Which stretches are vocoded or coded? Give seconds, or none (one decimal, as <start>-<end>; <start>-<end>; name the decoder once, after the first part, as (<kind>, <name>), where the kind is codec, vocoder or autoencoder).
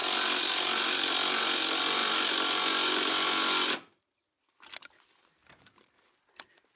none